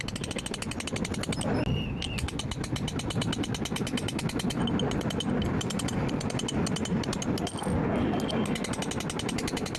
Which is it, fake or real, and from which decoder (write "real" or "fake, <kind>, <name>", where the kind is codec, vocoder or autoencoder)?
real